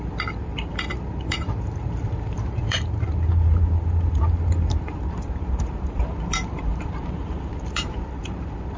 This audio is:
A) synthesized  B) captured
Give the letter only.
A